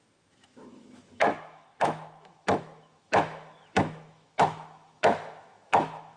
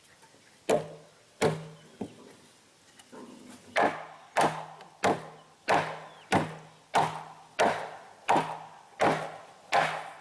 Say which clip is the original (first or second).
second